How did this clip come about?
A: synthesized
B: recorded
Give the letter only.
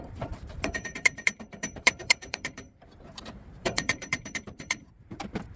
A